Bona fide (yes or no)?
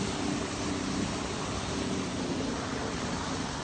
yes